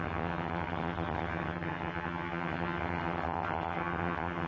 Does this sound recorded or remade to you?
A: remade